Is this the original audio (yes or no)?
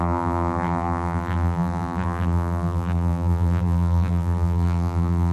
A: no